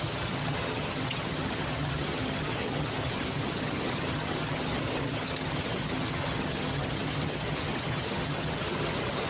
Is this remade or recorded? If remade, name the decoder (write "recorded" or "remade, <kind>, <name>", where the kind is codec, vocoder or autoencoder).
remade, vocoder, HiFi-GAN